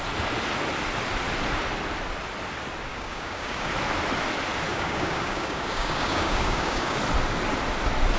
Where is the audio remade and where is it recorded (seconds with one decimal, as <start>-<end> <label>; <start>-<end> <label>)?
0.0-2.9 recorded; 2.9-3.7 remade; 3.7-4.7 recorded; 4.7-7.0 remade; 7.0-8.2 recorded